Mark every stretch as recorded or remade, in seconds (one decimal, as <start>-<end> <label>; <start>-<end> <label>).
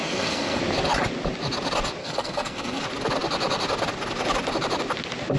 0.0-0.6 remade; 0.6-2.0 recorded; 2.0-2.8 remade; 2.8-5.4 recorded